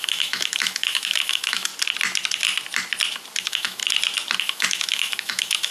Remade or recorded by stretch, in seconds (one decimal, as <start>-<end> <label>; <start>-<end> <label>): 0.0-1.7 remade; 1.7-3.4 recorded; 3.4-3.8 remade; 3.8-4.4 recorded; 4.4-5.7 remade